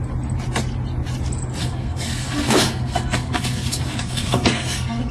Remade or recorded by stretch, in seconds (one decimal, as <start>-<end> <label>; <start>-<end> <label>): 0.0-1.6 recorded; 1.6-5.1 remade